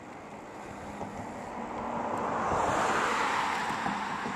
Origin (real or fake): real